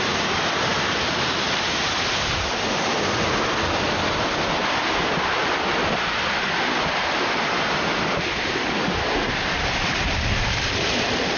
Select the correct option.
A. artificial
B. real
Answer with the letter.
A